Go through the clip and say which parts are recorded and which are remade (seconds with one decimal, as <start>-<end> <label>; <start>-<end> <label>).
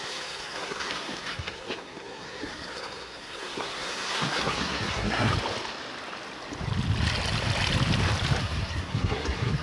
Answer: 0.0-5.3 remade; 5.3-8.4 recorded; 8.4-9.6 remade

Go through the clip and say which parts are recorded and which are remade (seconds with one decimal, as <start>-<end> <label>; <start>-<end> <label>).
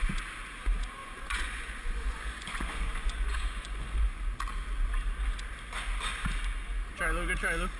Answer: 0.0-1.0 recorded; 1.0-4.2 remade; 4.2-7.8 recorded